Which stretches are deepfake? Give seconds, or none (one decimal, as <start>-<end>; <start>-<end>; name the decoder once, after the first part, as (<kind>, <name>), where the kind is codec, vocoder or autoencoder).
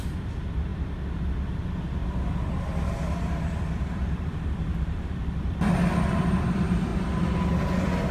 2.0-5.4 (vocoder, BigVGAN v2)